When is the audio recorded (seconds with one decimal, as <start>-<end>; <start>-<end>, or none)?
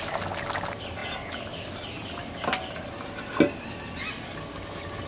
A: 0.0-5.1